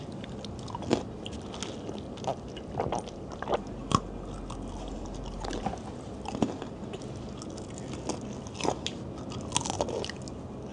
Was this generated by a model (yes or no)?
no